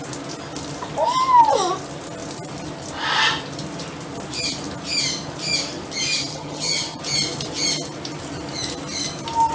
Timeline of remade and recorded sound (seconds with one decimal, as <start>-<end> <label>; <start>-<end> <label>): 0.0-6.3 recorded; 6.3-7.0 remade; 7.0-9.5 recorded